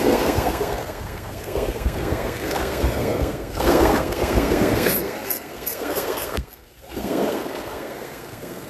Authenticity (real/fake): fake